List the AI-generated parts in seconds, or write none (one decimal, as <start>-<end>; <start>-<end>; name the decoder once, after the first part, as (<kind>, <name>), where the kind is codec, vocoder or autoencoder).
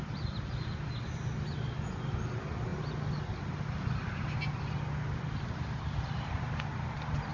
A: none